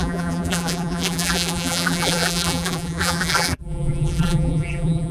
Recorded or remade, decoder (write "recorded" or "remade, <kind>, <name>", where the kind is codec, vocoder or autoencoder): remade, vocoder, BigVGAN v2